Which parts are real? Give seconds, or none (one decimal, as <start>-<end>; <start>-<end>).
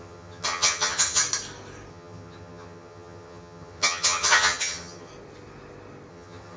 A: 1.2-1.9; 5.1-6.1